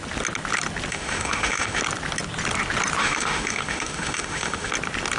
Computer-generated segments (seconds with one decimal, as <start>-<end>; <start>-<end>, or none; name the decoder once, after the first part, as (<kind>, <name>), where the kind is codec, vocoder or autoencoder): 0.9-1.8 (autoencoder, DAC-VAE); 3.0-4.7